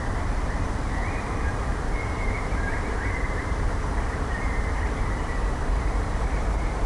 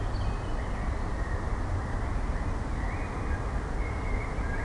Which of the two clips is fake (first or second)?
first